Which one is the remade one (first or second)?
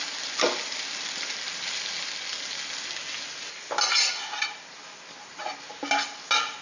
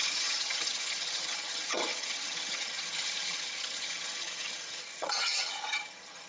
second